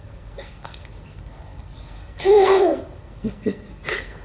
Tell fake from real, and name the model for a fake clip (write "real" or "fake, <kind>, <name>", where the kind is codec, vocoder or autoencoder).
fake, codec, SNAC